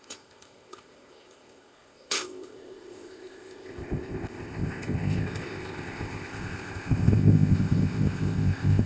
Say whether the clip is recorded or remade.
remade